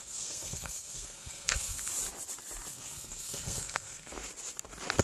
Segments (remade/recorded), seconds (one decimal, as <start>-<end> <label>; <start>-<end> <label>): 0.0-1.9 remade; 1.9-2.7 recorded; 2.7-4.1 remade; 4.1-5.0 recorded